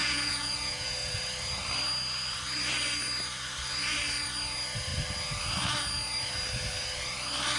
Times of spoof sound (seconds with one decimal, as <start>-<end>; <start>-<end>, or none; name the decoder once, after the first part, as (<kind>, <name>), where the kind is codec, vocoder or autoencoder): 0.0-1.2 (vocoder, Vocos)